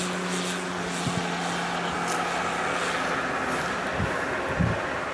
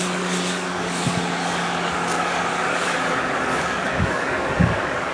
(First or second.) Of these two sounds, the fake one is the second